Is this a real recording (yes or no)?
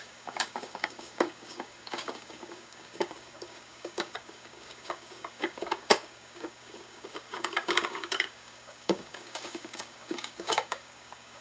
no